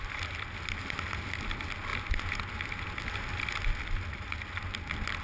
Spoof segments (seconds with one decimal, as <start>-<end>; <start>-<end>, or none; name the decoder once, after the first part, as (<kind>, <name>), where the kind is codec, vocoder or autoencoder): none